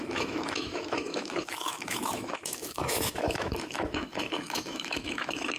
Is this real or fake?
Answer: fake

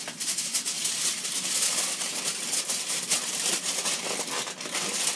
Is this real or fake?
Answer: real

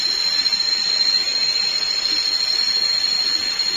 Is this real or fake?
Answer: real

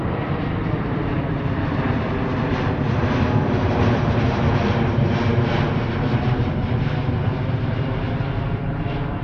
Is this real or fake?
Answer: fake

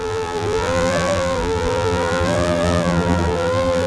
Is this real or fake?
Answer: fake